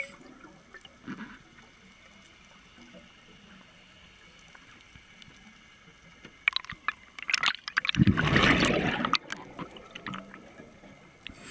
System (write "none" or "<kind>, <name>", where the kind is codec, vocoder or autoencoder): none